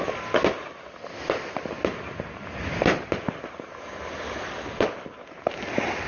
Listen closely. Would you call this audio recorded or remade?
recorded